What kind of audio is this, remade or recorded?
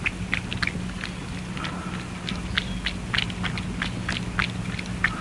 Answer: recorded